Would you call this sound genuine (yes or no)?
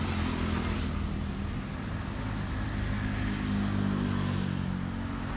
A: yes